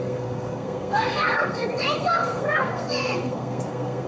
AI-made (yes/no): yes